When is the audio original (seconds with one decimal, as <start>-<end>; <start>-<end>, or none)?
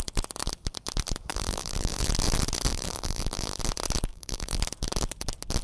0.0-1.3; 2.0-2.7; 3.6-4.1; 4.6-5.6